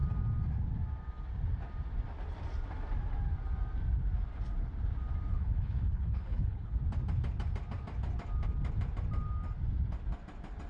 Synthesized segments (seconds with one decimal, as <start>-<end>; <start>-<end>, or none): 5.3-6.8